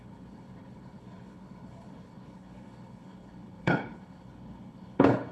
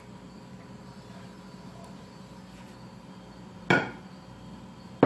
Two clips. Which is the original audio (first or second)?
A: second